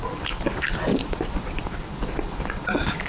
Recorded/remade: remade